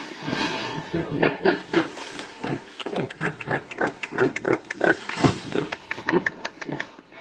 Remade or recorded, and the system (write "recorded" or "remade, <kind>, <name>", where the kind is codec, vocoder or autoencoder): remade, codec, SNAC